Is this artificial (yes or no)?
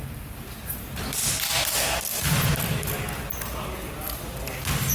no